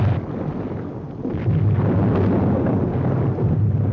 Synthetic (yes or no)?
no